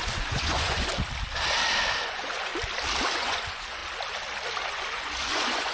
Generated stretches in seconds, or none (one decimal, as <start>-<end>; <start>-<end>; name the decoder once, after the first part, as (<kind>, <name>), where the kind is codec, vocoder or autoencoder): 0.0-0.9 (vocoder, Vocos); 2.0-2.5; 3.1-3.8; 4.7-5.7